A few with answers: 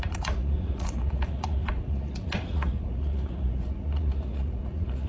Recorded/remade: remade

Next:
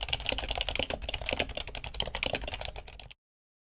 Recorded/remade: recorded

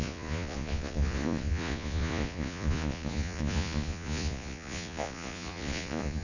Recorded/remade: remade